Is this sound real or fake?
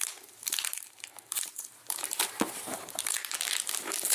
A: fake